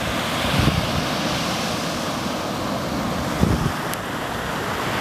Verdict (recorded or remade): recorded